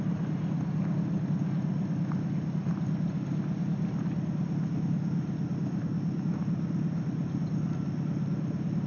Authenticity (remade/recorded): recorded